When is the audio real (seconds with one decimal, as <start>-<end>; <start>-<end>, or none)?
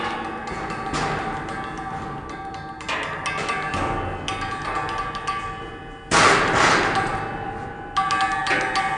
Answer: 0.0-9.0